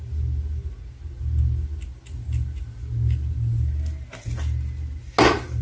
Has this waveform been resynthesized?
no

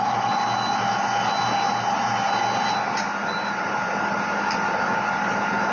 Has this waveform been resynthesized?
no